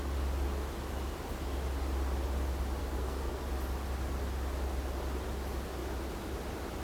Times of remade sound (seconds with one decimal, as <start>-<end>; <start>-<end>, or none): 2.8-3.4